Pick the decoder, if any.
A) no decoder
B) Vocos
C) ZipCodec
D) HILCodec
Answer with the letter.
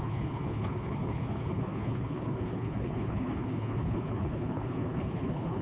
D